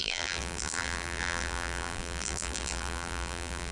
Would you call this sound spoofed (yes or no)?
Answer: yes